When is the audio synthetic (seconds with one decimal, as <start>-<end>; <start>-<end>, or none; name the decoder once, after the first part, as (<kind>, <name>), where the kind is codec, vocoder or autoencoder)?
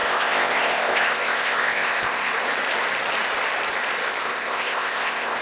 0.0-2.3 (codec, ZipCodec); 4.2-5.4